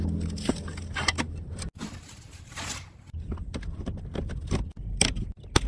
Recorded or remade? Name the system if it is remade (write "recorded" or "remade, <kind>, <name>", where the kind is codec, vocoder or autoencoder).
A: recorded